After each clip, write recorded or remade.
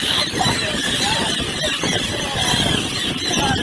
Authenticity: remade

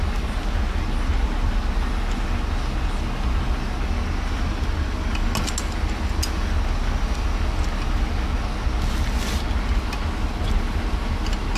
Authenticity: recorded